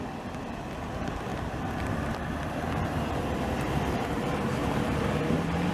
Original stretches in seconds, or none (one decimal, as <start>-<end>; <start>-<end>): none